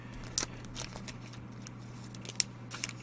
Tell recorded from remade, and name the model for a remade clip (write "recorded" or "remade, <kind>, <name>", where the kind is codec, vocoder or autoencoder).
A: recorded